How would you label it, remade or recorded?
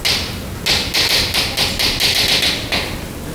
recorded